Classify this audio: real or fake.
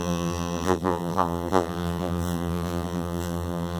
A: fake